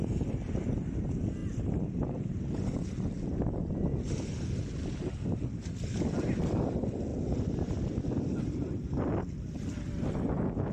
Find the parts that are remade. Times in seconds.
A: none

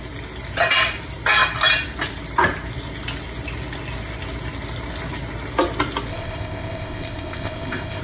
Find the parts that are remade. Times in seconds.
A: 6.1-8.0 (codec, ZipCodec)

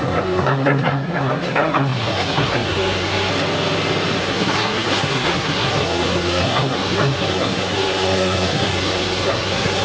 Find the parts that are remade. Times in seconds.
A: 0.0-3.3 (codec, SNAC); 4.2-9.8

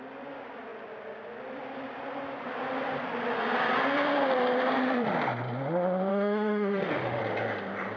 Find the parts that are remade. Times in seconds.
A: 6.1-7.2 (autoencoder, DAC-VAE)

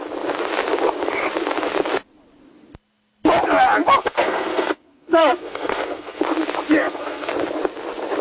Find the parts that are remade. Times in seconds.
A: 4.0-6.2 (codec, SNAC); 6.8-7.3

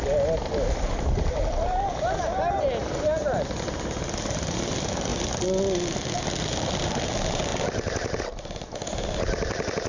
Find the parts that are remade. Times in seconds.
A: none

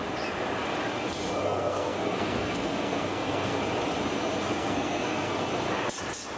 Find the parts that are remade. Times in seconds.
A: 1.4-3.6 (codec, SNAC); 4.4-5.5

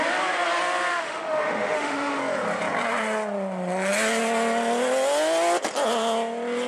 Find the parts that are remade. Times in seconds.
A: 0.9-2.2 (autoencoder, DAC-VAE)